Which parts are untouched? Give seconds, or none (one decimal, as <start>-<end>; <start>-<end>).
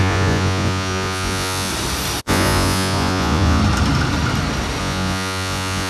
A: 1.7-2.2; 3.6-4.8